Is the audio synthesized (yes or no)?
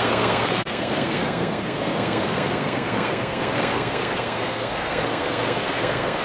yes